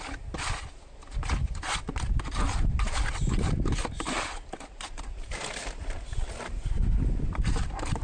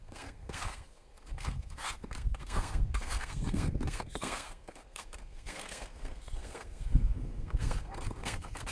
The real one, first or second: first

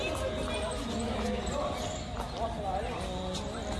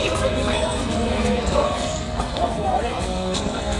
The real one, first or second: first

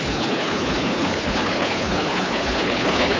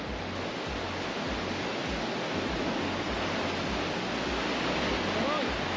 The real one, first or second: second